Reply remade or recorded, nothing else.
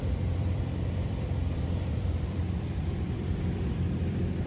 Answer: remade